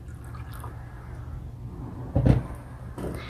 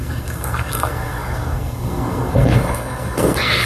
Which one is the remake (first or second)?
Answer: second